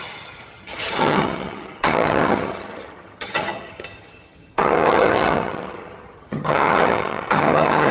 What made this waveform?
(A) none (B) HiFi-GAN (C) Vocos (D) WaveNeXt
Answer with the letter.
B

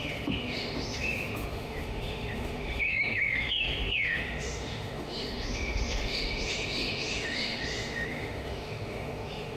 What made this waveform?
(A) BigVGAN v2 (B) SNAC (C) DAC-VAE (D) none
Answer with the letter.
C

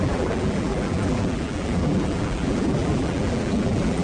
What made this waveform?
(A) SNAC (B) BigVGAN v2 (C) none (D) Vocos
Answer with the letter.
B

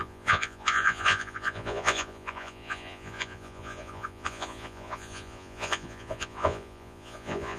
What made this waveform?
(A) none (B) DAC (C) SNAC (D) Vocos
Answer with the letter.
D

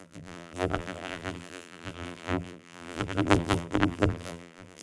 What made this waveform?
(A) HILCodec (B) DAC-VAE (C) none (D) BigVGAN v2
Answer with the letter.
D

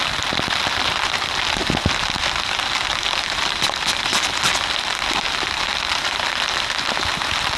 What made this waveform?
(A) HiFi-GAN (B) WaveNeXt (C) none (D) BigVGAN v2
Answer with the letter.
D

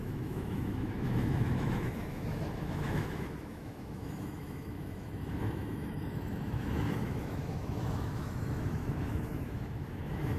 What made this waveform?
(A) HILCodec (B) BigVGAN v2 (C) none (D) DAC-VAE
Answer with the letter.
D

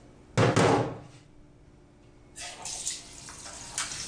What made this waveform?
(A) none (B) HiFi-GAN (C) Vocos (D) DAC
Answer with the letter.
A